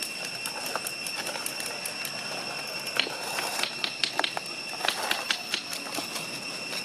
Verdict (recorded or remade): recorded